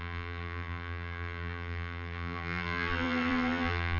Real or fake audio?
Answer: fake